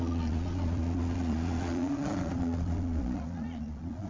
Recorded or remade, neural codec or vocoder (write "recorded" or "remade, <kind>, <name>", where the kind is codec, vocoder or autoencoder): remade, vocoder, Vocos